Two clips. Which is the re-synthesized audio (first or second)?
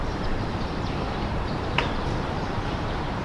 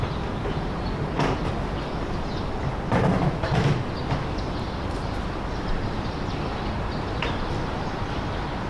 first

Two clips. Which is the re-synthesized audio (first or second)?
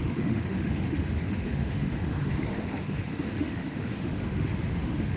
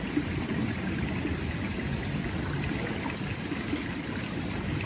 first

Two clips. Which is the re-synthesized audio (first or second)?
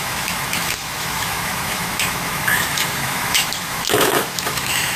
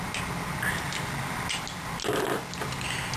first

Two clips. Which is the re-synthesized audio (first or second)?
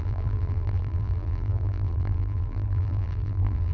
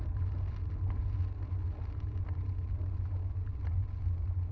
first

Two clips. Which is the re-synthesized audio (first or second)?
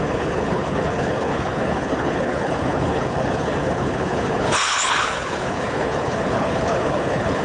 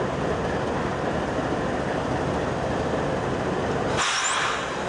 first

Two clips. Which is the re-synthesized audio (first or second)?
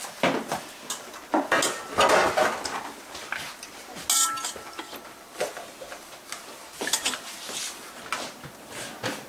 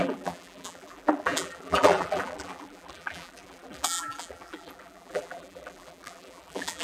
second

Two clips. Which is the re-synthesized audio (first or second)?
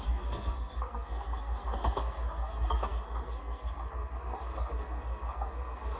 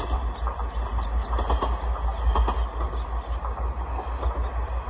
first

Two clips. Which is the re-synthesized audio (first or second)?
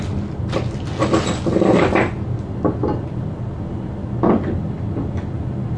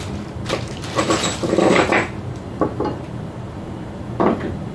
second